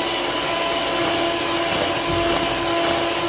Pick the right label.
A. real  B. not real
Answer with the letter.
A